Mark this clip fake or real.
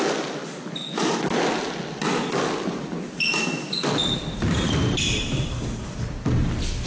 real